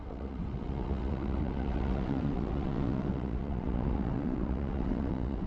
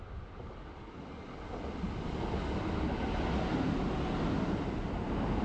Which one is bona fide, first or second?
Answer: second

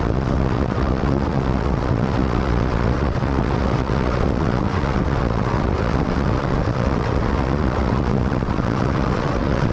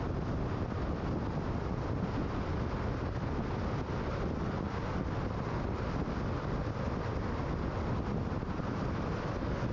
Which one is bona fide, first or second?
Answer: second